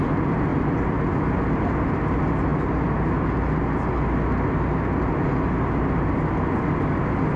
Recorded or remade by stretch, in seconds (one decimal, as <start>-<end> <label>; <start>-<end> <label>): 0.0-7.4 recorded